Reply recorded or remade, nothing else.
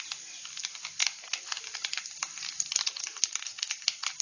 recorded